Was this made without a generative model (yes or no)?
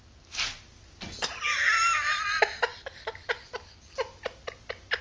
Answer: yes